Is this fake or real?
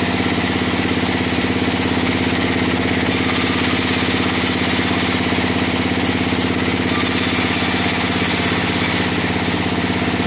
real